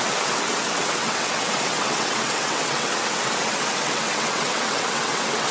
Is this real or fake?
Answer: fake